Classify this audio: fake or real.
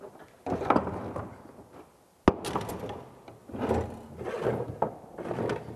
real